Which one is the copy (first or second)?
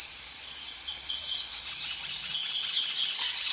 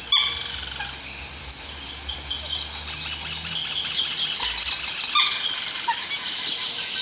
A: first